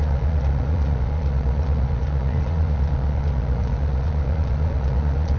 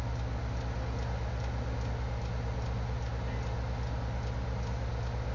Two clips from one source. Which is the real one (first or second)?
second